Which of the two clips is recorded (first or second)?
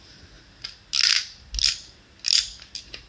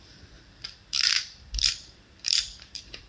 first